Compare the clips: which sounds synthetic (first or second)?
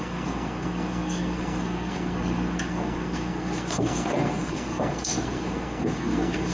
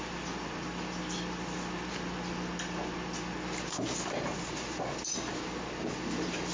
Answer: first